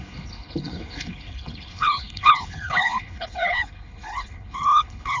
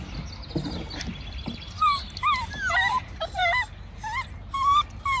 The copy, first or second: first